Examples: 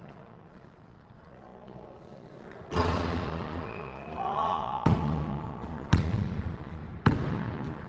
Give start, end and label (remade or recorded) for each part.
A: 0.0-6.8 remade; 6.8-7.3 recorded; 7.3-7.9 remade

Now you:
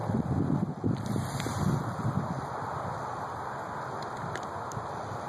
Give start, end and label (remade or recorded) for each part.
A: 0.0-5.3 recorded

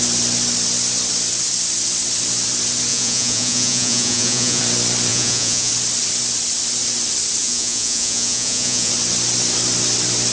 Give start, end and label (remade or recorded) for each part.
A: 0.0-2.9 recorded; 2.9-4.6 remade; 4.6-5.1 recorded; 5.1-5.7 remade; 5.7-7.4 recorded; 7.4-8.9 remade; 8.9-10.3 recorded

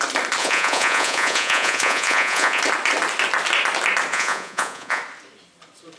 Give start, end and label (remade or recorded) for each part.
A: 0.0-0.4 recorded; 0.4-2.6 remade; 2.6-4.1 recorded; 4.1-5.0 remade; 5.0-6.0 recorded

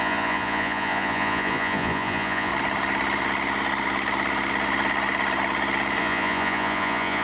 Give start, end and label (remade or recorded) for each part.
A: 0.0-2.5 remade; 2.5-6.0 recorded; 6.0-7.2 remade

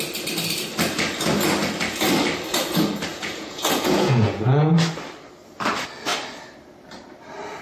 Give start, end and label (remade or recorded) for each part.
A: 0.0-3.1 recorded; 3.1-4.7 remade; 4.7-7.6 recorded

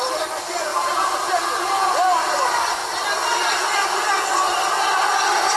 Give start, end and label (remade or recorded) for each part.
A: 0.0-0.7 recorded; 0.7-1.9 remade; 1.9-5.6 recorded